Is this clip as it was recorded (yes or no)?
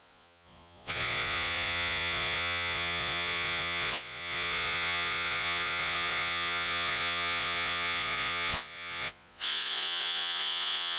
no